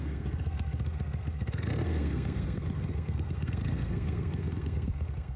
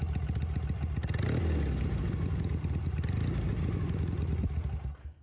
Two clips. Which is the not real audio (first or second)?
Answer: first